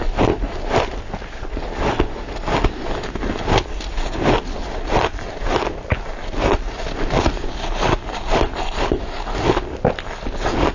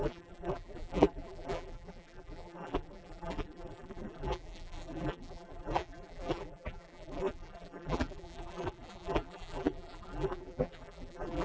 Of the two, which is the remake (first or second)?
second